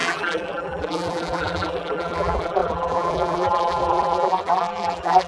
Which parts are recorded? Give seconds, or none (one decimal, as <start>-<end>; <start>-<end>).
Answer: none